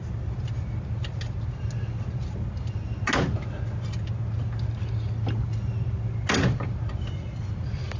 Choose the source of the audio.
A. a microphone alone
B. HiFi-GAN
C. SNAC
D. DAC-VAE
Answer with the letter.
A